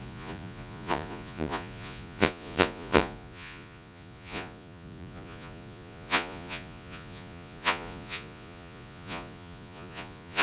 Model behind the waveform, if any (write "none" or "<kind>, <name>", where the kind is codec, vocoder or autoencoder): vocoder, Vocos